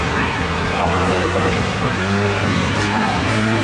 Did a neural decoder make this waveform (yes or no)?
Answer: yes